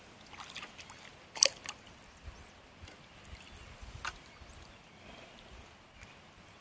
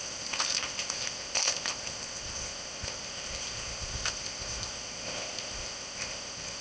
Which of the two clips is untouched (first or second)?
first